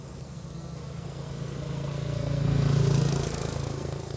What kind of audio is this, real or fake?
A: fake